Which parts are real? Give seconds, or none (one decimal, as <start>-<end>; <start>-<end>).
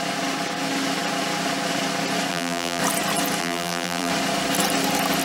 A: 0.0-2.3; 2.8-3.4; 4.1-5.2